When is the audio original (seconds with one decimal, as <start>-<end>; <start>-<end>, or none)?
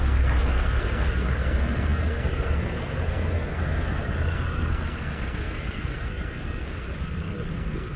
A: none